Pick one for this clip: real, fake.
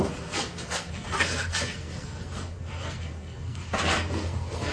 fake